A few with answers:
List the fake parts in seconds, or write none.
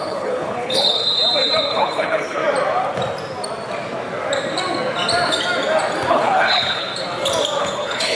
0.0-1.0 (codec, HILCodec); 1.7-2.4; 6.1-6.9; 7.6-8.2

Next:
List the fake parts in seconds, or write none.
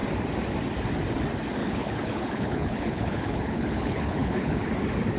1.6-4.7 (codec, HILCodec)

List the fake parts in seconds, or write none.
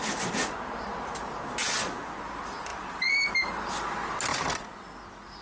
none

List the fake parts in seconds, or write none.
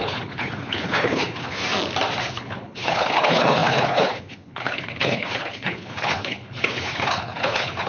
0.0-1.6 (codec, HILCodec); 2.2-7.9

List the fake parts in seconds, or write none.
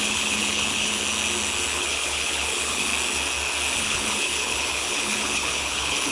0.0-1.0 (codec, HILCodec); 1.7-2.9; 3.8-6.1